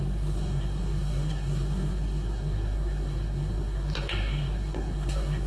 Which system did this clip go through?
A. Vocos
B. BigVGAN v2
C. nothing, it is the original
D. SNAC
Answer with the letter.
D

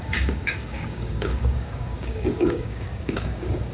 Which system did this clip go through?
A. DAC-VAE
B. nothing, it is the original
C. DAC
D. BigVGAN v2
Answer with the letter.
C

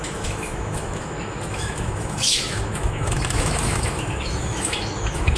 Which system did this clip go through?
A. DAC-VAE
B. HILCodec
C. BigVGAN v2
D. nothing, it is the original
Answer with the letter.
A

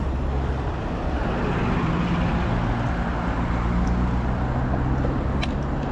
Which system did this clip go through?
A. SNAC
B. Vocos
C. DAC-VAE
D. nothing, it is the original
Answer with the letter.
D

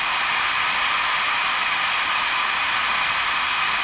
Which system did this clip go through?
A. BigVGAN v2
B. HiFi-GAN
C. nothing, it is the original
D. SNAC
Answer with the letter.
C